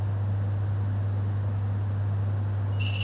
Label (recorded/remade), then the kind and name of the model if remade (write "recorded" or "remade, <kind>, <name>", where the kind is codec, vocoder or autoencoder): recorded